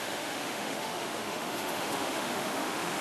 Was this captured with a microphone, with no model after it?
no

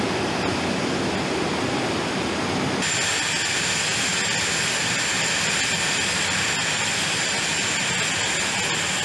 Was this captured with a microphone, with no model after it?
yes